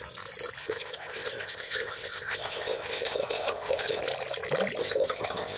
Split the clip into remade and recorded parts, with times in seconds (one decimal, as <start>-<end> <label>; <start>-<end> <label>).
0.0-0.6 recorded; 0.6-4.0 remade; 4.0-4.8 recorded; 4.8-5.6 remade